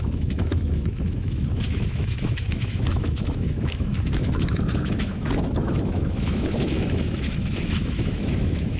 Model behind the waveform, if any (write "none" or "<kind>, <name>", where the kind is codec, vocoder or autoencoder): autoencoder, DAC-VAE